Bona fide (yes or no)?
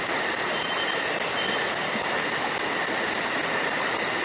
yes